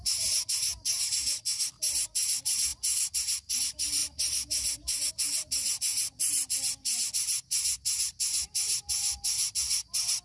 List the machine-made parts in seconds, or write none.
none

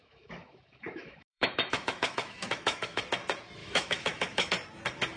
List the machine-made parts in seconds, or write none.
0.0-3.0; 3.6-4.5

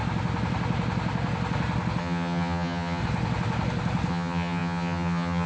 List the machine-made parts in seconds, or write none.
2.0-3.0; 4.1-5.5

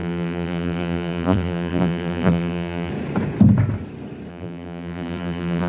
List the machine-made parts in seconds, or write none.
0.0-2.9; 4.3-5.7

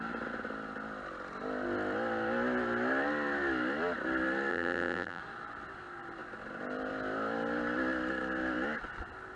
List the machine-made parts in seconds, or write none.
4.5-5.2

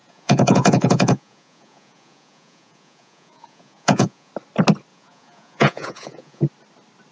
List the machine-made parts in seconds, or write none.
0.0-4.3; 4.9-6.4

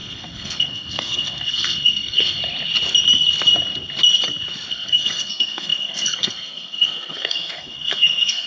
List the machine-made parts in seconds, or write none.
0.0-2.4; 4.7-8.5